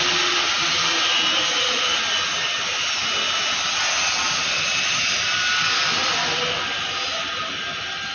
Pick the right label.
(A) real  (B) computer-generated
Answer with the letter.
A